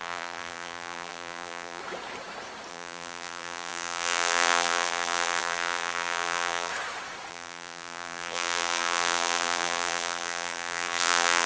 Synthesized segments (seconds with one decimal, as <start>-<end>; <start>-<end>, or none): 0.0-1.8; 2.7-6.7; 7.3-11.5